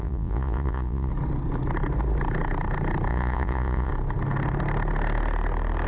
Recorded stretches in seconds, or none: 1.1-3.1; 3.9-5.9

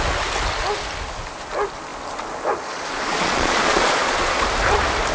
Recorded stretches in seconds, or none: 0.0-3.1; 4.4-5.1

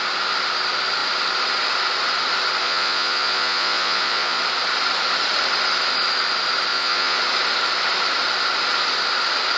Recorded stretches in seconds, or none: 0.0-2.6; 4.4-6.7; 7.2-9.6

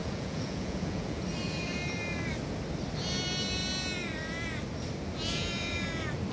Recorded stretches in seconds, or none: 1.2-6.3

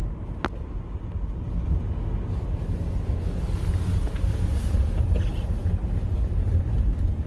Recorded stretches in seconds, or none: 0.0-7.3

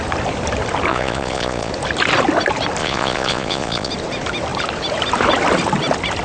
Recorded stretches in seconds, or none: 0.0-0.9; 1.7-2.8; 3.9-6.2